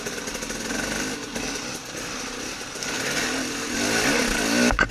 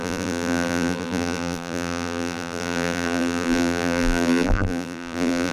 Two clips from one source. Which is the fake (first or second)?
second